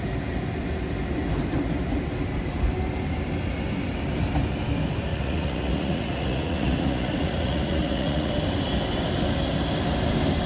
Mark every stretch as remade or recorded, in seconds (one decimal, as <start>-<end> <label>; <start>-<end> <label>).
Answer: 0.0-5.1 recorded; 5.1-8.3 remade; 8.3-10.5 recorded